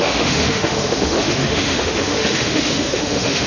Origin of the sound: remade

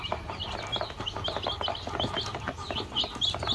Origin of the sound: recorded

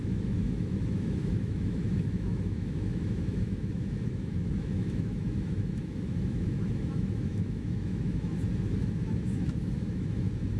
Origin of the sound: remade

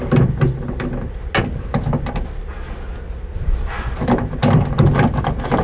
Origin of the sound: recorded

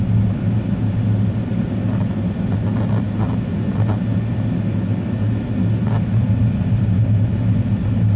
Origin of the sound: recorded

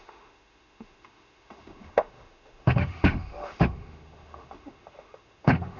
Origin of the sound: remade